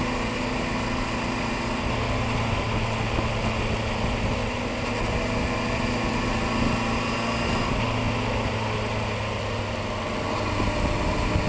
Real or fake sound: real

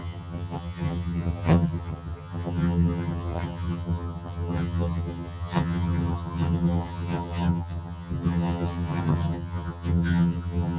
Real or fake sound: fake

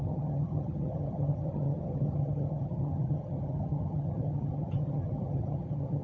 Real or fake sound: fake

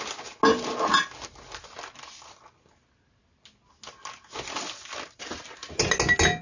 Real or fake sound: real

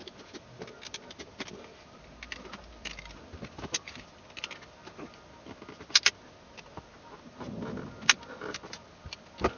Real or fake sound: real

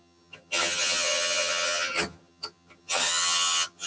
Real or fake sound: fake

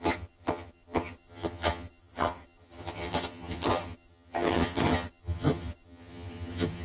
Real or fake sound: fake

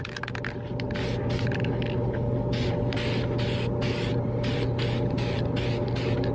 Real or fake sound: real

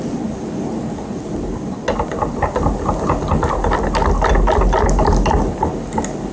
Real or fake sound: real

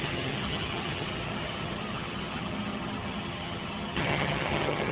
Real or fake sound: fake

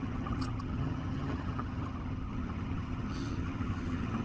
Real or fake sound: fake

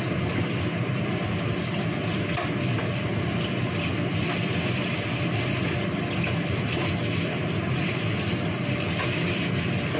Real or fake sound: real